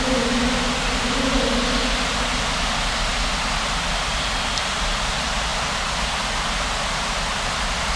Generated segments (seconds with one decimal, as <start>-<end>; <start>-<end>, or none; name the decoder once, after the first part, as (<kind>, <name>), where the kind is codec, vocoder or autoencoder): 5.5-6.1 (vocoder, BigVGAN v2)